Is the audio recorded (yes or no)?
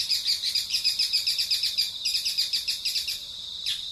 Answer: yes